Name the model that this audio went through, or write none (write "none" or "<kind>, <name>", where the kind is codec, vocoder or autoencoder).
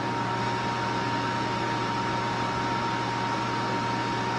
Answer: none